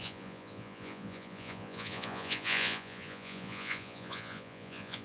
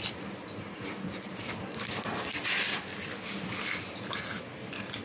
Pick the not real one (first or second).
first